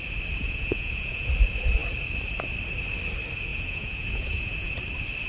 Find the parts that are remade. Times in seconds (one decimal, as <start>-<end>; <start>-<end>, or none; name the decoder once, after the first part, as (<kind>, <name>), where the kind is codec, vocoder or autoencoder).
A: 0.4-1.3 (vocoder, Vocos); 3.5-4.8